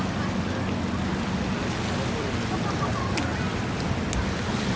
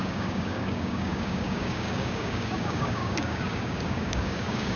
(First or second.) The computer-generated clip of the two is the second